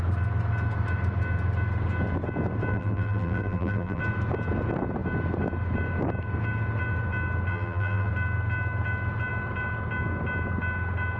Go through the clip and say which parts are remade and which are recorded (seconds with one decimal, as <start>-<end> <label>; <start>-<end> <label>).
0.0-2.7 recorded; 2.7-4.0 remade; 4.0-7.5 recorded; 7.5-8.1 remade; 8.1-11.2 recorded